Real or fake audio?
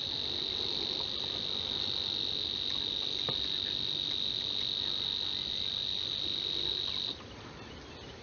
real